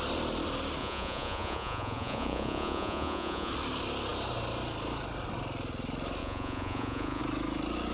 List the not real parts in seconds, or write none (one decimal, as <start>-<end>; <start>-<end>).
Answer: 0.8-3.5; 6.2-7.2